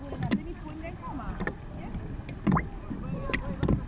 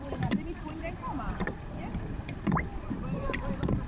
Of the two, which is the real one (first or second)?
first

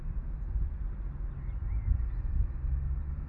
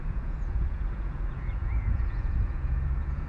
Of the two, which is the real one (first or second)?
first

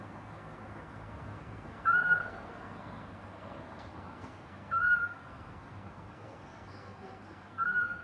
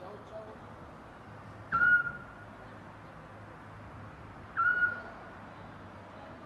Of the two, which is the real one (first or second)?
second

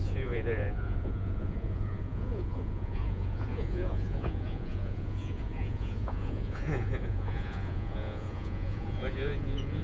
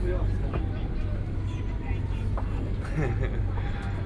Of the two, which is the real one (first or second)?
second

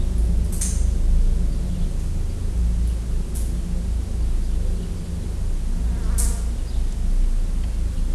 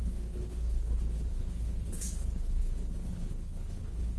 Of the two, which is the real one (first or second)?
first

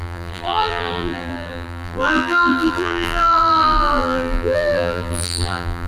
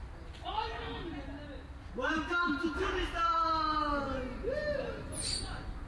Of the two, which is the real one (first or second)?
second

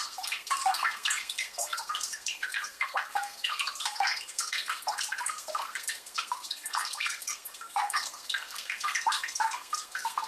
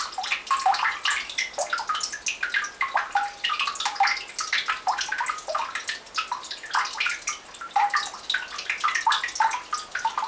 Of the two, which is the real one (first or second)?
second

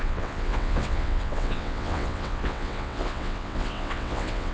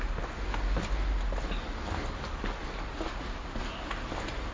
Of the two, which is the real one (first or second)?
second